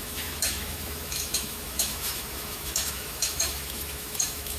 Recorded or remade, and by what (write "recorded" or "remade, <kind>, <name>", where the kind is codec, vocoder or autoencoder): remade, autoencoder, DAC-VAE